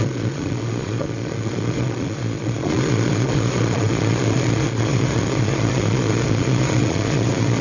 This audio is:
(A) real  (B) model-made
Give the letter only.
B